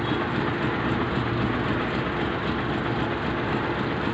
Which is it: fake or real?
real